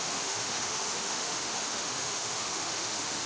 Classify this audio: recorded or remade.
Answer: remade